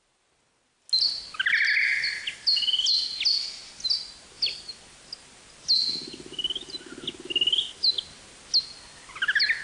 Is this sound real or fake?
real